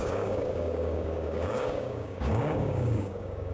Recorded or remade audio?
remade